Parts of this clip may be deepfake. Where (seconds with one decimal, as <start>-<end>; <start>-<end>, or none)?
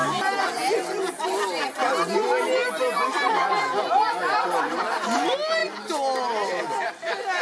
none